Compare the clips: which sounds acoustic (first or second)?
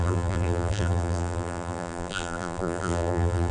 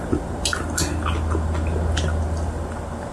second